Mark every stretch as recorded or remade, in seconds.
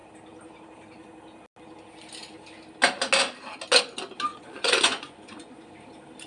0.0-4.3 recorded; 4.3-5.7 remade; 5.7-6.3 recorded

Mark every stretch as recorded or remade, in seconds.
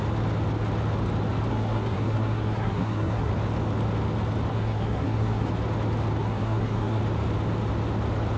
0.0-1.5 recorded; 1.5-3.3 remade; 3.3-4.5 recorded; 4.5-5.5 remade; 5.5-6.2 recorded; 6.2-7.0 remade; 7.0-8.4 recorded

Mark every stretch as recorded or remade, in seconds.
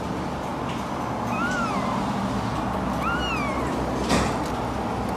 0.0-5.2 recorded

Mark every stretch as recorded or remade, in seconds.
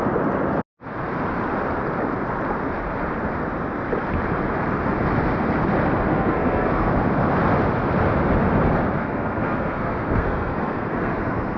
0.0-6.1 recorded; 6.1-6.9 remade; 6.9-9.0 recorded; 9.0-11.6 remade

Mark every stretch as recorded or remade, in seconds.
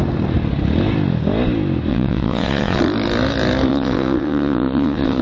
0.0-1.9 recorded; 1.9-2.8 remade; 2.8-3.7 recorded; 3.7-5.2 remade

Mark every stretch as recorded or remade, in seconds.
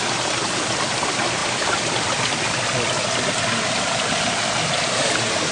0.0-5.5 recorded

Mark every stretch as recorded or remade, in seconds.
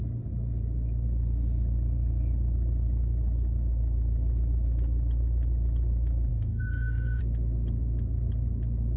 0.0-6.3 recorded; 6.3-7.2 remade; 7.2-9.0 recorded